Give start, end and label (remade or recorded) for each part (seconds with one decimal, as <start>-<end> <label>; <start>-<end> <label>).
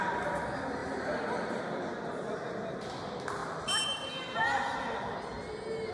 0.0-0.8 recorded; 0.8-1.6 remade; 1.6-3.4 recorded; 3.4-4.1 remade; 4.1-5.9 recorded